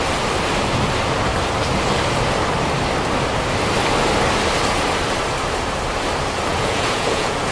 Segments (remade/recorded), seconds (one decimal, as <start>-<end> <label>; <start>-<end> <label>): 0.0-6.5 recorded; 6.5-7.5 remade